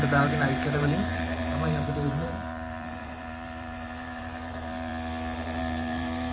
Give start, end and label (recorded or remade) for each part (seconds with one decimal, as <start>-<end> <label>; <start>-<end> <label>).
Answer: 0.0-4.9 remade; 4.9-5.6 recorded; 5.6-6.3 remade